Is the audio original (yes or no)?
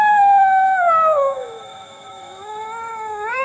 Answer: no